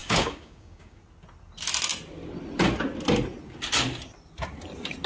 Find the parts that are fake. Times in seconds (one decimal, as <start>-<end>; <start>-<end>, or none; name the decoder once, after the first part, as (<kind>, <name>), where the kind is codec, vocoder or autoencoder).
0.0-1.0 (codec, DAC)